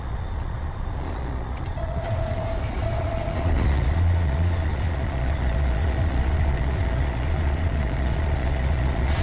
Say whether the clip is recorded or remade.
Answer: remade